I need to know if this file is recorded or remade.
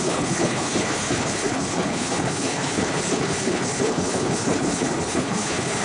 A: remade